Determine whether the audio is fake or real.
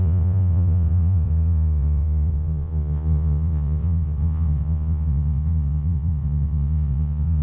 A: fake